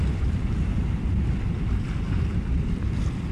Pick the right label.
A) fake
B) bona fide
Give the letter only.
B